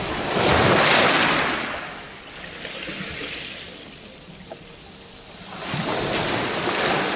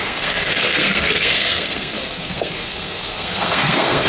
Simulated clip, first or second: second